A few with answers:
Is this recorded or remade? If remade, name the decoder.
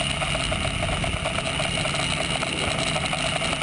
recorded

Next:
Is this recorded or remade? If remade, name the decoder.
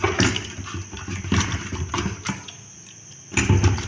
recorded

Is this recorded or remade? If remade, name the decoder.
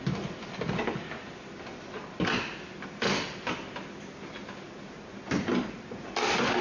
recorded